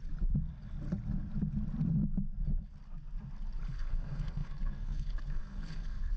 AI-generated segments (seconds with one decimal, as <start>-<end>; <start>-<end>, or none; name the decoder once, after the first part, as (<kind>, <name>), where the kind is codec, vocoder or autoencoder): 3.7-6.2 (codec, SNAC)